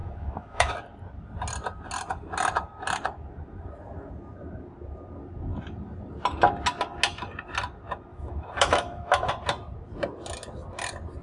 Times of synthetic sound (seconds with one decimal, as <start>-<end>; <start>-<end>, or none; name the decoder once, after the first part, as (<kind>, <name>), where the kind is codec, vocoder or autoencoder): 0.0-0.7 (autoencoder, DAC-VAE); 8.1-9.3